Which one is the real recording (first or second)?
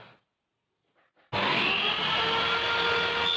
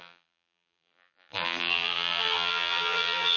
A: first